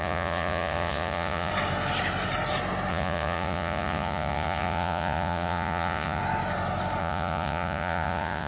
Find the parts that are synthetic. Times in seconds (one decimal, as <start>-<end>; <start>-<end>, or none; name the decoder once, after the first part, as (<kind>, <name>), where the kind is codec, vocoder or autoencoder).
0.0-1.5 (vocoder, Vocos); 2.9-6.2; 7.0-8.5